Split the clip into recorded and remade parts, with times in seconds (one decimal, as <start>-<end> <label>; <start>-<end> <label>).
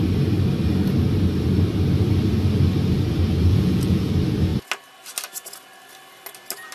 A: 0.0-3.5 recorded; 3.5-4.1 remade; 4.1-6.7 recorded